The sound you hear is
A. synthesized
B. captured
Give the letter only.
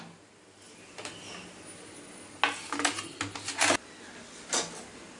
B